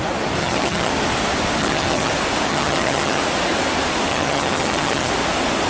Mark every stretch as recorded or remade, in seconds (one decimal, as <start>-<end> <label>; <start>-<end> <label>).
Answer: 0.0-0.4 recorded; 0.4-0.9 remade; 0.9-1.6 recorded; 1.6-2.1 remade; 2.1-2.5 recorded; 2.5-3.2 remade; 3.2-4.1 recorded; 4.1-5.1 remade; 5.1-5.7 recorded